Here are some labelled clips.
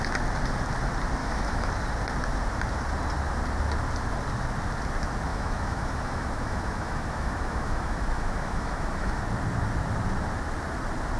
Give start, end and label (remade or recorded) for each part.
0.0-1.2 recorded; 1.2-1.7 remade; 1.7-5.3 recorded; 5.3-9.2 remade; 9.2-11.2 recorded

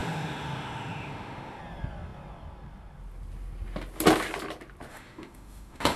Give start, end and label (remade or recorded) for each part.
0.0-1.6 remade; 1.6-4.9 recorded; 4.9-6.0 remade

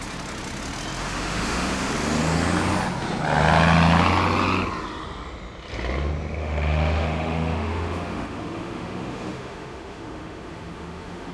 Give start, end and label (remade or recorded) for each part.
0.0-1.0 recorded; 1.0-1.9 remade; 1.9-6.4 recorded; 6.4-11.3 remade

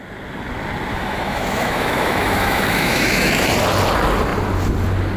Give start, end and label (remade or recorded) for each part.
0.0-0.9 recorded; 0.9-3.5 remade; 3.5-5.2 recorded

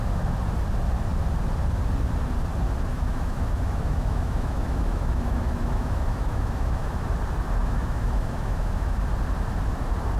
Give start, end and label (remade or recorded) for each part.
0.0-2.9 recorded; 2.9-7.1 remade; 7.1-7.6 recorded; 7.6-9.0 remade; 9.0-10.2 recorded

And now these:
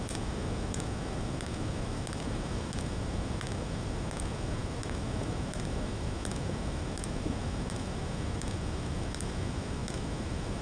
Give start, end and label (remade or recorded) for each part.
0.0-10.6 remade